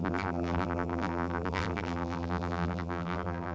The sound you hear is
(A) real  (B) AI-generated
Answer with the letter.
B